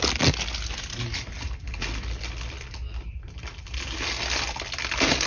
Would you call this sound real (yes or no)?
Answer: yes